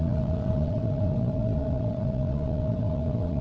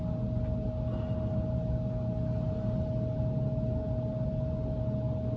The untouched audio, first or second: second